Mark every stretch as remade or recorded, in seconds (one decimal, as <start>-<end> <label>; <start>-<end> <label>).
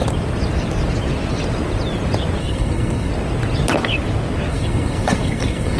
0.0-2.4 recorded; 2.4-3.1 remade; 3.1-4.5 recorded; 4.5-5.8 remade